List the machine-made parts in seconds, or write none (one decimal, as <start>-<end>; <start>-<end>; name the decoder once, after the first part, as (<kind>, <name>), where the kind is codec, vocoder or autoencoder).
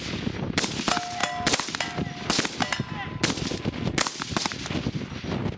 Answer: none